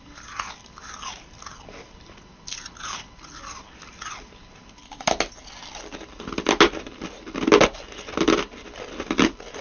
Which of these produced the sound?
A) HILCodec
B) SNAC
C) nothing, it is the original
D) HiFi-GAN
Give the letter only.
C